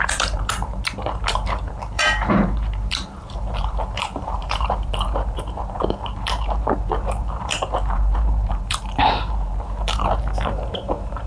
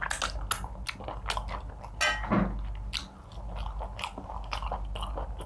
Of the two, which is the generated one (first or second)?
first